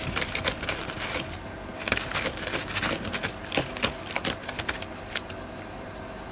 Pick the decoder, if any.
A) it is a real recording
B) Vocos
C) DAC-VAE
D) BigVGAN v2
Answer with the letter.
A